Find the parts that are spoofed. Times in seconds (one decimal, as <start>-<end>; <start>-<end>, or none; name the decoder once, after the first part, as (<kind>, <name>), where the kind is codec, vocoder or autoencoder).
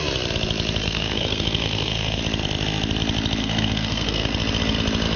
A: 0.8-2.2 (codec, SNAC); 3.4-4.3